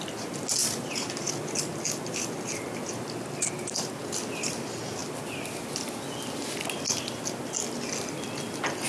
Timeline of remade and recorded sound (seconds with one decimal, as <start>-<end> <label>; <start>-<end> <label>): 0.0-0.6 recorded; 0.6-1.3 remade; 1.3-8.9 recorded

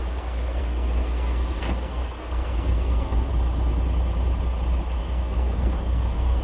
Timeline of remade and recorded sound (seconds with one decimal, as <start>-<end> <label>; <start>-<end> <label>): 0.0-3.3 remade; 3.3-5.0 recorded; 5.0-6.4 remade

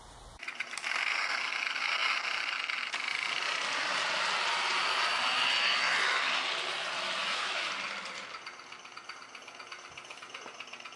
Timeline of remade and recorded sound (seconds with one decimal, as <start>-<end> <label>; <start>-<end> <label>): 0.0-7.2 recorded; 7.2-7.7 remade; 7.7-11.0 recorded

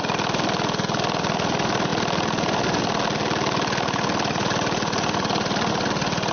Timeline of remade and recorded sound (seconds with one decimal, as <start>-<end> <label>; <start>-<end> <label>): 0.0-6.3 recorded

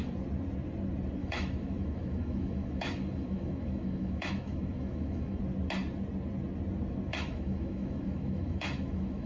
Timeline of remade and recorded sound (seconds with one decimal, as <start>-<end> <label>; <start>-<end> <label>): 0.0-1.2 recorded; 1.2-5.4 remade; 5.4-7.1 recorded; 7.1-9.3 remade

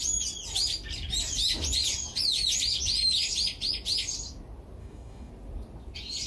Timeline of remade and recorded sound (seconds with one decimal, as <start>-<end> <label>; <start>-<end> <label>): 0.0-4.8 recorded; 4.8-5.3 remade; 5.3-6.3 recorded

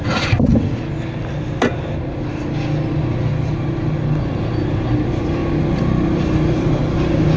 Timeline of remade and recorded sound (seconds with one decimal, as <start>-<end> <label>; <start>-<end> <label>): 0.0-5.4 recorded; 5.4-6.8 remade; 6.8-7.4 recorded